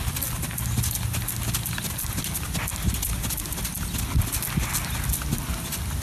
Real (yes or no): yes